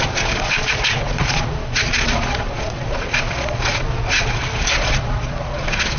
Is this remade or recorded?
remade